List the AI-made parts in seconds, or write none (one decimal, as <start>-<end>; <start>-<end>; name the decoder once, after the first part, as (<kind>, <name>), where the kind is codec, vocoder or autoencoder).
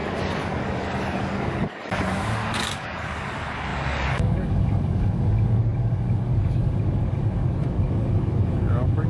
0.0-9.1 (codec, DAC)